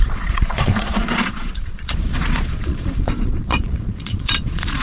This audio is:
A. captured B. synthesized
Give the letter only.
B